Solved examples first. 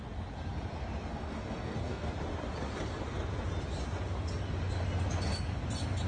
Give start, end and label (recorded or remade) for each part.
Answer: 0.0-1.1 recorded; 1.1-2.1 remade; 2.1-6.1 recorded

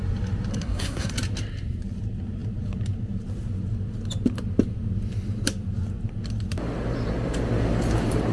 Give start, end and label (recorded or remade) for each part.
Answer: 0.0-0.5 recorded; 0.5-1.1 remade; 1.1-8.3 recorded

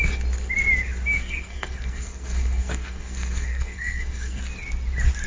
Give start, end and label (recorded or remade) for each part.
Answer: 0.0-1.2 recorded; 1.2-4.4 remade; 4.4-5.3 recorded

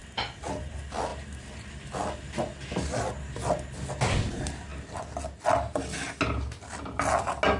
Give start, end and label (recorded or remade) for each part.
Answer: 0.0-7.6 recorded

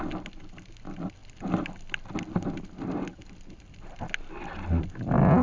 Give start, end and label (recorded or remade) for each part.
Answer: 0.0-5.4 recorded

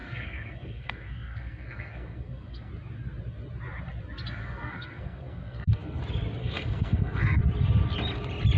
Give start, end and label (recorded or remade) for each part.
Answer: 0.0-2.7 remade; 2.7-4.4 recorded; 4.4-6.0 remade; 6.0-6.4 recorded; 6.4-7.4 remade; 7.4-8.6 recorded

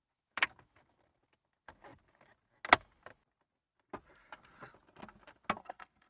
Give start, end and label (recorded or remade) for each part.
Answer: 0.0-5.6 recorded; 5.6-6.1 remade

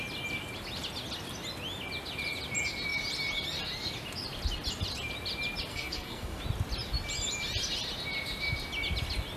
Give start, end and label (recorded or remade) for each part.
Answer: 0.0-5.7 recorded; 5.7-6.4 remade; 6.4-9.4 recorded